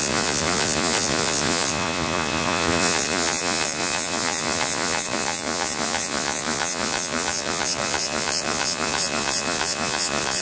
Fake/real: fake